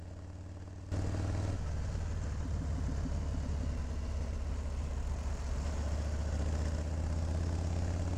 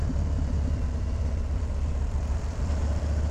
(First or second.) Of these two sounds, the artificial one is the second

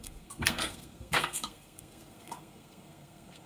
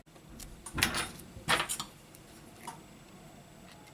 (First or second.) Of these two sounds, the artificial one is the first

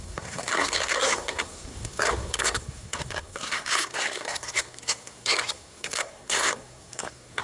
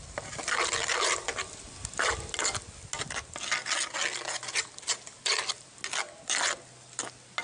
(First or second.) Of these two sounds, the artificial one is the first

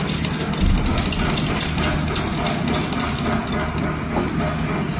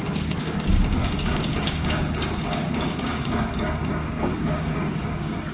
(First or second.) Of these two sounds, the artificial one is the second